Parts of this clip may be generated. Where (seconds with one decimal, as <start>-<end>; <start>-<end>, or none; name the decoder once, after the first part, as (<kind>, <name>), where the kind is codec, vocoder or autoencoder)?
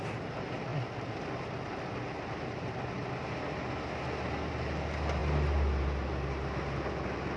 none